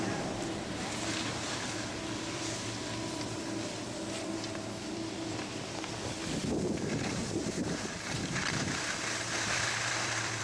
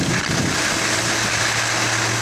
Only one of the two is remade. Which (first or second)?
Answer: first